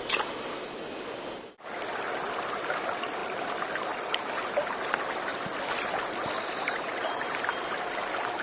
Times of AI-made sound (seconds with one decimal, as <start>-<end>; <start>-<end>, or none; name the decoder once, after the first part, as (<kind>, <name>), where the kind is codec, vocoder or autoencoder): none

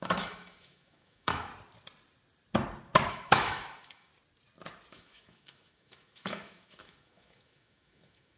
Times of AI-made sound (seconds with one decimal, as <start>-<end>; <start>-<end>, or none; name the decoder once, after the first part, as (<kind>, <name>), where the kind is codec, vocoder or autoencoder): 0.0-1.5 (autoencoder, DAC-VAE); 3.1-4.1; 4.9-8.4

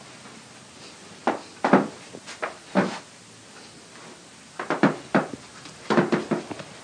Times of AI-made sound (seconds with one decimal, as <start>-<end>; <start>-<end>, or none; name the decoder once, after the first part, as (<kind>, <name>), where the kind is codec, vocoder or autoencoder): none

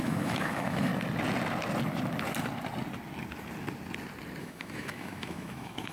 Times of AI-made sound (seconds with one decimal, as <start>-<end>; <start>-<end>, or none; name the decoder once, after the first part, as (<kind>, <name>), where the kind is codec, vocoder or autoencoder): 0.0-0.9 (autoencoder, DAC-VAE); 4.4-5.9

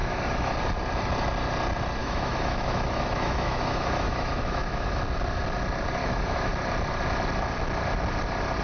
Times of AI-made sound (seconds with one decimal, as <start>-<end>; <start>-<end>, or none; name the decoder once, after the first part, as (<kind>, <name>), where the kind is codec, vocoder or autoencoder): 0.0-0.5 (autoencoder, DAC-VAE); 2.0-5.0; 6.0-6.5

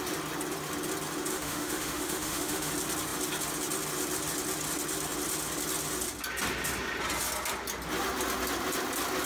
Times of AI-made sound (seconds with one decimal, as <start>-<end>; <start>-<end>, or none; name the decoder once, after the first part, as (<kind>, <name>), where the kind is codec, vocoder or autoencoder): 1.3-2.7 (autoencoder, DAC-VAE)